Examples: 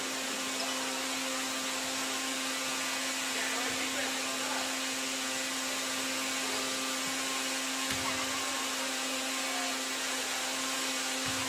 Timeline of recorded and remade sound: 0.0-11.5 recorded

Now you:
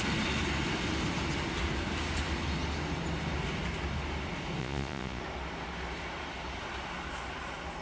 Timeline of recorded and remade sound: 0.0-4.6 recorded; 4.6-5.2 remade; 5.2-7.8 recorded

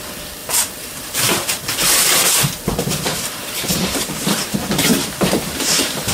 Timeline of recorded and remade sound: 0.0-0.4 recorded; 0.4-1.6 remade; 1.6-3.1 recorded; 3.1-4.4 remade; 4.4-4.9 recorded; 4.9-6.1 remade

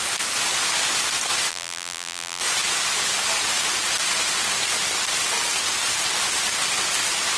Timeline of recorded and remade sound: 0.0-1.5 recorded; 1.5-2.4 remade; 2.4-7.4 recorded

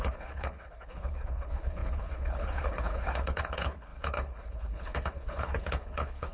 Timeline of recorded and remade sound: 0.0-6.3 remade

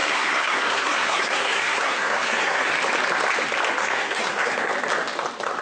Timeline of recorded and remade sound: 0.0-2.7 remade; 2.7-3.8 recorded; 3.8-4.7 remade; 4.7-5.6 recorded

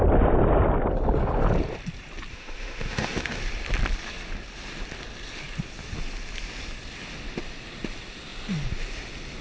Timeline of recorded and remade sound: 0.0-2.3 recorded; 2.3-3.4 remade; 3.4-9.4 recorded